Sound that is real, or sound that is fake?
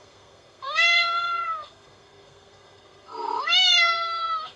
fake